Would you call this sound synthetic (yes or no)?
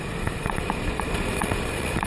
yes